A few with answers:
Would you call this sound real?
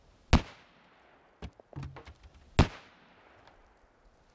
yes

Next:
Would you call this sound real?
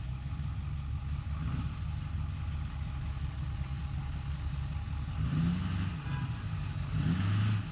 yes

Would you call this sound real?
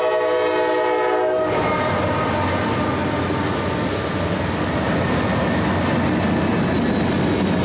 yes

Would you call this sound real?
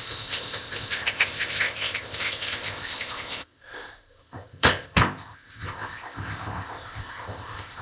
no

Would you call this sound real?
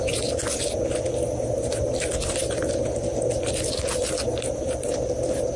yes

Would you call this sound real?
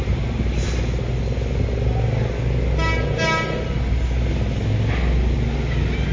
yes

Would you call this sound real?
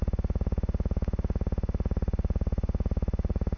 yes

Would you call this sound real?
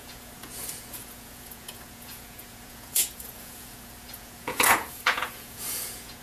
no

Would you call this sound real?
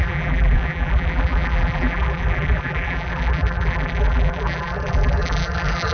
no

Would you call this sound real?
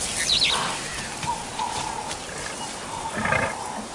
yes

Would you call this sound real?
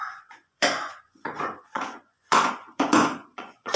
no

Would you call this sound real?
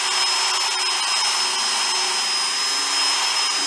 yes